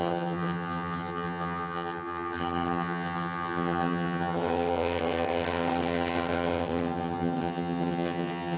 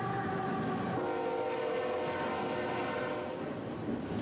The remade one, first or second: first